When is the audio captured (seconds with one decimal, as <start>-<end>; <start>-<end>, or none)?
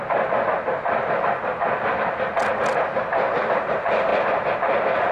0.0-5.1